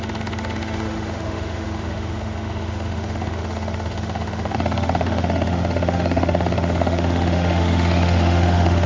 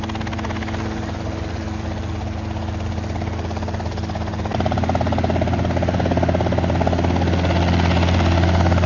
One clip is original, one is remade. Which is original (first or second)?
second